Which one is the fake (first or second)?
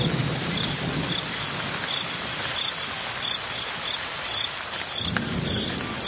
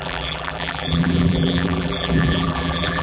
second